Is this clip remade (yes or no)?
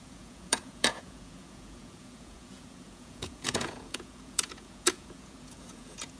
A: yes